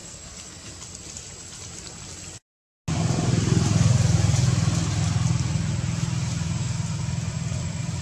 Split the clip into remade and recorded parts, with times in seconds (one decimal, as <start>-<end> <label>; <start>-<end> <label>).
0.0-0.7 remade; 0.7-8.0 recorded